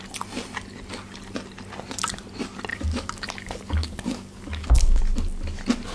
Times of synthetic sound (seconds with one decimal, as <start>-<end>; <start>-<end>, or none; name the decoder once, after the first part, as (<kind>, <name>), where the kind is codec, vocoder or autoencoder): 2.7-5.0 (codec, DAC)